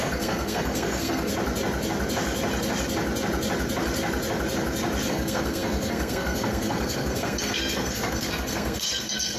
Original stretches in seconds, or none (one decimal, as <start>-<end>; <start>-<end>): 1.3-5.1